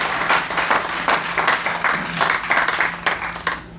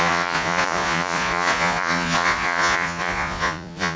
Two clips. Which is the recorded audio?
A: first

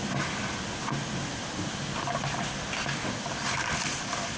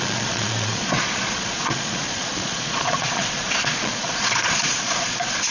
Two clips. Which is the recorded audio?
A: first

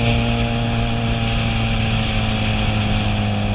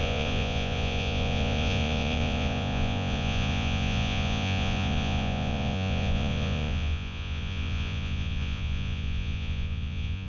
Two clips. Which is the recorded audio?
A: first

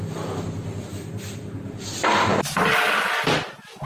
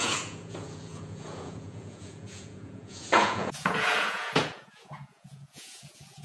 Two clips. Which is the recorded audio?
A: first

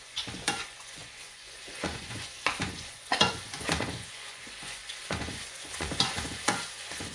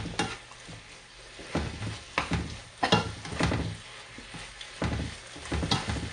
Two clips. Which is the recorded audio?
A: second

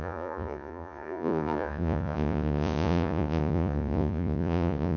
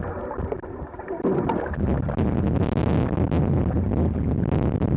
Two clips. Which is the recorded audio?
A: second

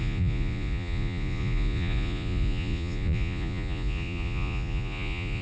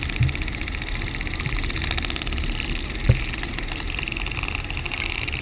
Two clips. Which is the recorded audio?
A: second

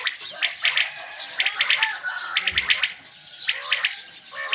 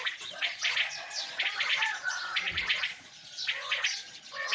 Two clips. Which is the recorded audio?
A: first